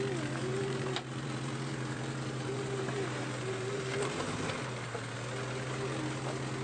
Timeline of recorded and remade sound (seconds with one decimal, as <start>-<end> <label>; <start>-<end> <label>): 0.0-0.5 recorded; 0.5-4.5 remade; 4.5-6.6 recorded